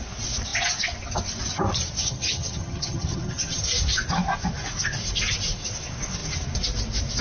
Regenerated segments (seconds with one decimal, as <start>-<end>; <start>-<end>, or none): 2.0-3.6